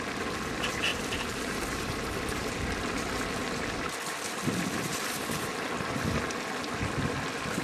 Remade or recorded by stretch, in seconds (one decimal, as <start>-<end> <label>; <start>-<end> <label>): 0.0-0.9 recorded; 0.9-2.6 remade; 2.6-4.9 recorded; 4.9-5.5 remade; 5.5-7.6 recorded